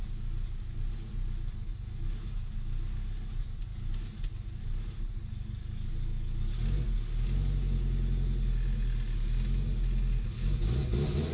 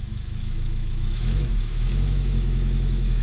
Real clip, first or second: first